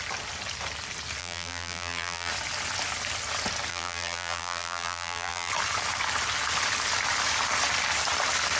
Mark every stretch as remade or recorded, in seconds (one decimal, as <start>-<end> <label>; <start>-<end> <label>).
0.0-1.2 recorded; 1.2-2.3 remade; 2.3-3.7 recorded; 3.7-5.5 remade; 5.5-8.6 recorded